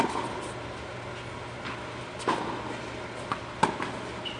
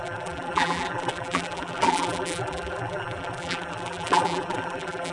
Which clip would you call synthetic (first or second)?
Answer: second